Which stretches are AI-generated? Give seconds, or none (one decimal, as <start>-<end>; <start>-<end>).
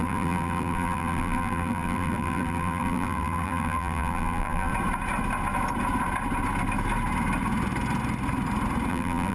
0.0-4.7; 8.9-9.3